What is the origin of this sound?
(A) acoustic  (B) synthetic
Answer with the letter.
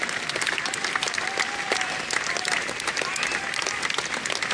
A